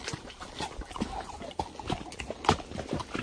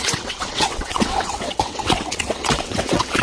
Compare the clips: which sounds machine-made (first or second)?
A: second